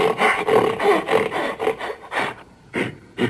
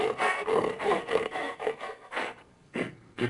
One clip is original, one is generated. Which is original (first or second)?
first